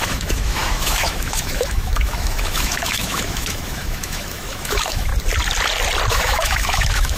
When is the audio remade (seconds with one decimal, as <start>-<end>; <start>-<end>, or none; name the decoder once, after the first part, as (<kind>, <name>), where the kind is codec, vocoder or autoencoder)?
0.0-5.1 (autoencoder, DAC-VAE); 6.1-7.2